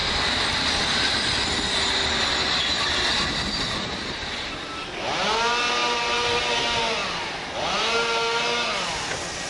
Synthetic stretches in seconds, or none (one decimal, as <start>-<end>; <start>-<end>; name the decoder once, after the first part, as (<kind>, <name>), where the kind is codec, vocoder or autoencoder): 5.8-6.4 (vocoder, BigVGAN v2)